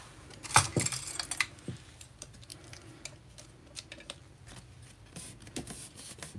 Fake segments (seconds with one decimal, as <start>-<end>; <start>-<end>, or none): none